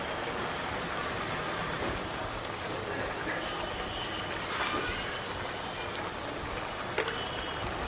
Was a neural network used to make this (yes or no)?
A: no